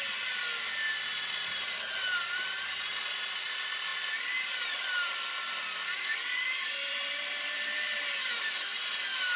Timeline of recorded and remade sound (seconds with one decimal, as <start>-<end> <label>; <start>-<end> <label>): 0.0-1.1 recorded; 1.1-2.8 remade; 2.8-3.9 recorded; 3.9-8.3 remade; 8.3-9.4 recorded